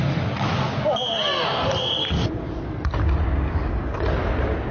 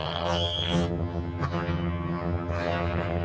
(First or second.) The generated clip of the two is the second